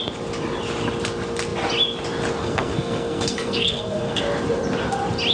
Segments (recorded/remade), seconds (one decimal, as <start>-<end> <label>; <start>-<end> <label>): 0.0-2.4 recorded; 2.4-4.2 remade; 4.2-5.3 recorded